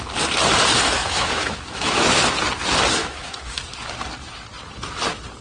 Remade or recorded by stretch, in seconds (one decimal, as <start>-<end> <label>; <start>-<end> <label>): 0.0-1.0 recorded; 1.0-2.2 remade; 2.2-3.0 recorded; 3.0-3.6 remade; 3.6-5.4 recorded